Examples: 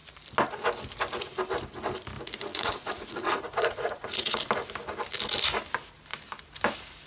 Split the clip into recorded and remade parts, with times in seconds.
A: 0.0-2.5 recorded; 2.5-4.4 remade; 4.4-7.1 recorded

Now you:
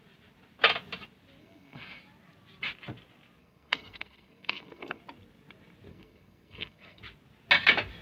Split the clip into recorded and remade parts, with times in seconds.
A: 0.0-1.4 recorded; 1.4-2.0 remade; 2.0-3.4 recorded; 3.4-5.0 remade; 5.0-5.9 recorded; 5.9-7.0 remade; 7.0-8.0 recorded